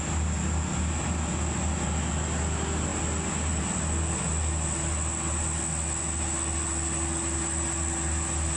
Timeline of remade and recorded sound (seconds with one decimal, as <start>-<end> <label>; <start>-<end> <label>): 0.0-8.6 recorded